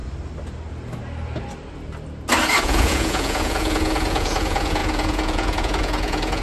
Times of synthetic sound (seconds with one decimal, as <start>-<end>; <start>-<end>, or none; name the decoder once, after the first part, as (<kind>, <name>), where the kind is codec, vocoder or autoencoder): 2.6-6.4 (vocoder, Vocos)